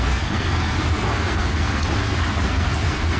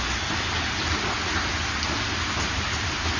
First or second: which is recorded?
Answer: second